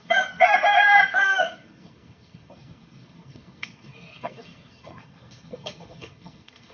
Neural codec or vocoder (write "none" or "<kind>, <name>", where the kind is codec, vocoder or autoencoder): codec, SNAC